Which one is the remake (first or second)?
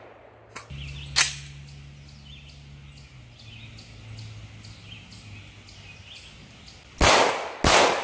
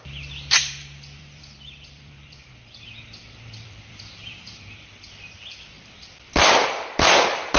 second